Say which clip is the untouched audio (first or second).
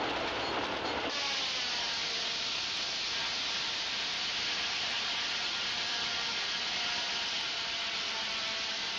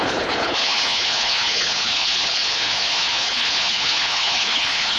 first